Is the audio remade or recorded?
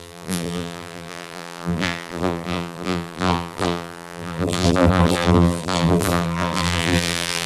remade